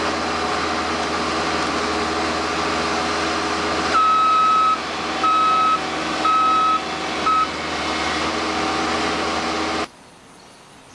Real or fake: real